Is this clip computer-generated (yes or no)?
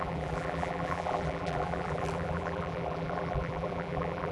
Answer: yes